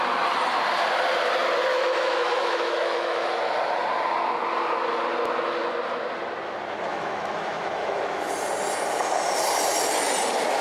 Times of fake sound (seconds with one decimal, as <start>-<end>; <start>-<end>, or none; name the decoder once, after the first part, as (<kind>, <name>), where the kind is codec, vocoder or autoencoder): 1.7-3.4 (autoencoder, DAC-VAE); 6.9-8.3